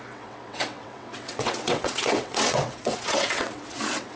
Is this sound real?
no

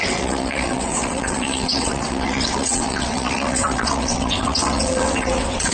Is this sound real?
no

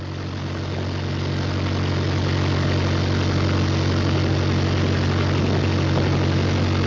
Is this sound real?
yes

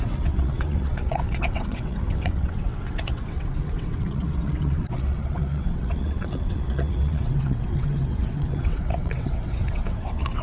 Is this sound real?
no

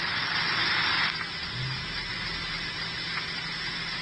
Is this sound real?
yes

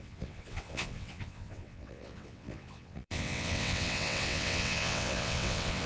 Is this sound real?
no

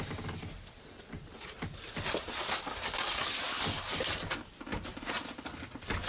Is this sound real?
yes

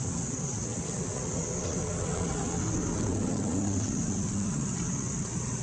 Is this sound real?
no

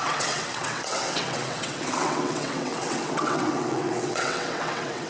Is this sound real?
no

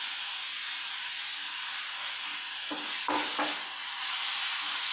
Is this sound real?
yes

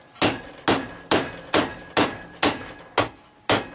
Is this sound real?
yes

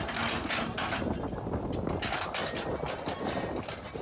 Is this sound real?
yes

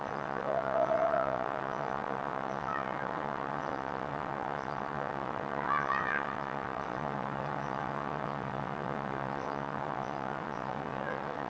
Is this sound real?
no